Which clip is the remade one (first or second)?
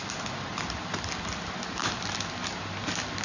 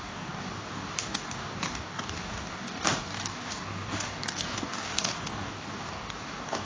second